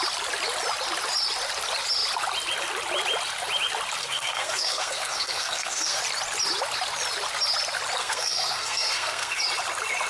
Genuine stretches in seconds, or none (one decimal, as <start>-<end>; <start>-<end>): 0.0-4.0; 6.0-8.0; 9.4-10.1

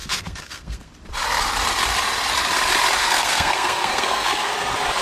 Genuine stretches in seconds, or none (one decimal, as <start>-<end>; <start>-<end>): 0.9-3.0; 4.5-5.0

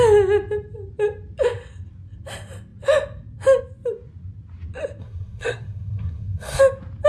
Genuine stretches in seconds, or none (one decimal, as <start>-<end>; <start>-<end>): 0.0-5.0; 6.6-7.1

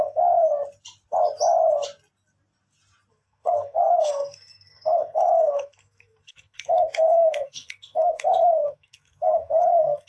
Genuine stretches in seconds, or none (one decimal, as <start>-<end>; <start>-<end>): 0.5-3.1

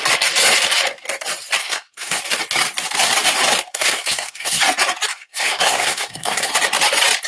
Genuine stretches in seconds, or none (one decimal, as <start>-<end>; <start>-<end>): 0.0-1.6; 2.2-3.7; 4.6-5.1; 6.5-7.3

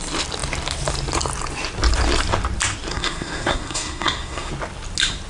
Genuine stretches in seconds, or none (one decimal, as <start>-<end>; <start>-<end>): 0.0-2.9; 4.5-5.3

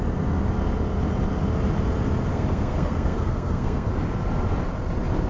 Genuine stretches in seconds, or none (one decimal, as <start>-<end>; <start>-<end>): 0.0-2.3; 3.9-5.3